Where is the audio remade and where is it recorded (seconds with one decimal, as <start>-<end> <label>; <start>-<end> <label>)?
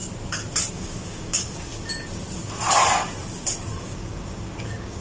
0.0-0.7 recorded; 0.7-1.7 remade; 1.7-3.8 recorded; 3.8-5.0 remade